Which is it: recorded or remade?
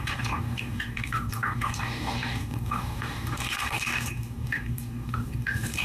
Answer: remade